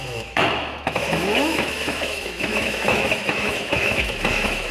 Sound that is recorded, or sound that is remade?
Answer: remade